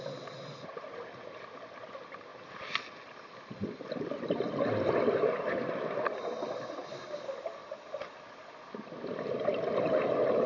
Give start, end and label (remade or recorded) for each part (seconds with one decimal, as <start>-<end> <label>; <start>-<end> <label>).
0.0-10.5 recorded